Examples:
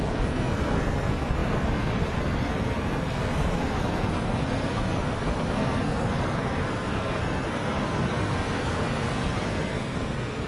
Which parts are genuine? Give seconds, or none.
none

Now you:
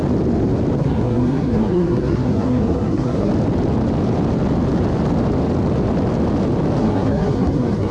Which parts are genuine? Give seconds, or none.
0.0-0.8; 3.3-6.8